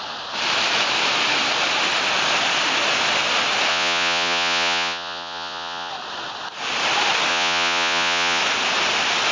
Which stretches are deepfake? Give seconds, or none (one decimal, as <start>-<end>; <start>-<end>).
3.7-5.9; 7.3-8.4